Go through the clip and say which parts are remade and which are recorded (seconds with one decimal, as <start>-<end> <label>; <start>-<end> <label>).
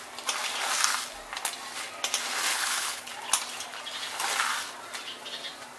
0.0-2.5 recorded; 2.5-3.1 remade; 3.1-5.8 recorded